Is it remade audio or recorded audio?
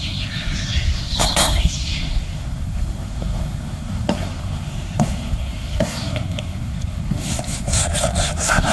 remade